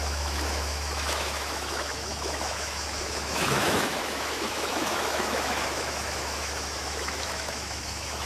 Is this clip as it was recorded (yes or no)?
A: no